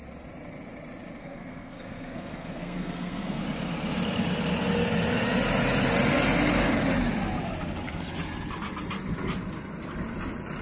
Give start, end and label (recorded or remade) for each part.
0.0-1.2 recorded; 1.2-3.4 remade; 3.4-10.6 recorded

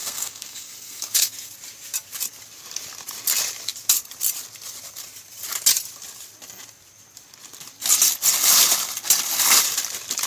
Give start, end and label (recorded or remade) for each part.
0.0-1.5 remade; 1.5-10.3 recorded

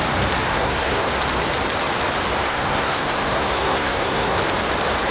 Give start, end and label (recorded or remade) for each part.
0.0-0.5 recorded; 0.5-1.1 remade; 1.1-2.5 recorded; 2.5-4.4 remade; 4.4-5.1 recorded

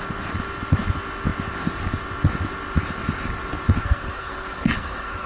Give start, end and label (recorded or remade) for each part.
0.0-3.8 recorded; 3.8-5.3 remade